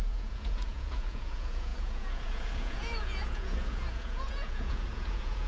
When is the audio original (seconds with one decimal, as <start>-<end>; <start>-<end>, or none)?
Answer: none